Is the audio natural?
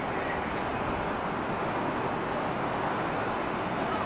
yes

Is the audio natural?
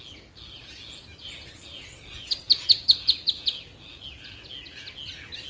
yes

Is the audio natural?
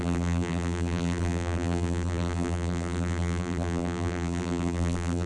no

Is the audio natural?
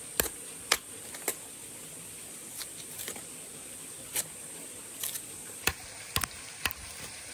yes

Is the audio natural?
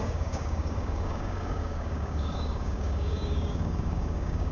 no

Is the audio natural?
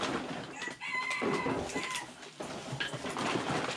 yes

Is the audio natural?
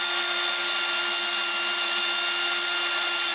yes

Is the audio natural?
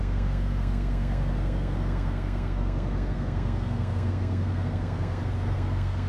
no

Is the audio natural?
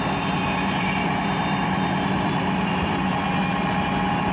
no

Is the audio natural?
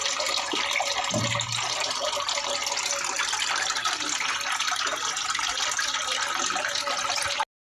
yes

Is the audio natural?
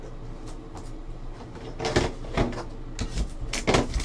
yes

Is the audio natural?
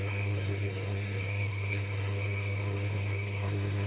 no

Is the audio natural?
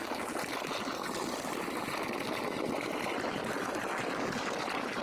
yes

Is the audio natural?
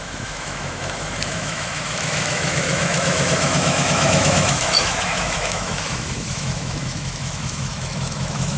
no